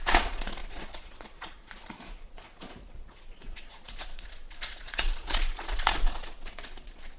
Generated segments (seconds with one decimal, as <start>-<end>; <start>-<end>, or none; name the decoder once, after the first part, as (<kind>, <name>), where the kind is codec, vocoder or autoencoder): 0.0-7.2 (vocoder, Vocos)